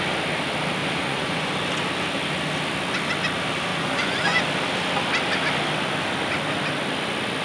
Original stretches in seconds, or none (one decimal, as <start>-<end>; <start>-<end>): 0.0-0.8; 1.5-3.7; 4.4-7.4